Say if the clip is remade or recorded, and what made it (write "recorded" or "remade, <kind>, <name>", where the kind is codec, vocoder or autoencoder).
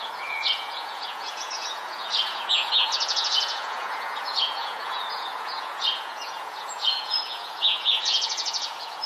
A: remade, vocoder, Vocos